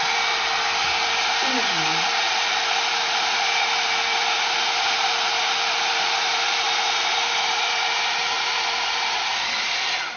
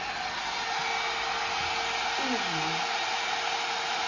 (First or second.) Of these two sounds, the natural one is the second